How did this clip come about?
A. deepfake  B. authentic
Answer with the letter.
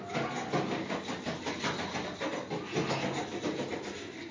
B